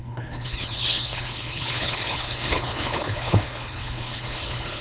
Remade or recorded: remade